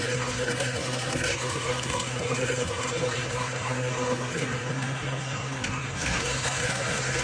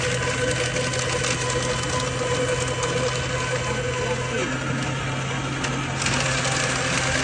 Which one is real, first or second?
second